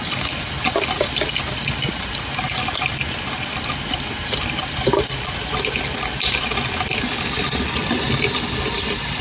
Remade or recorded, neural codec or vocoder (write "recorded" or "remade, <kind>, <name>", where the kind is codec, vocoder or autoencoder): recorded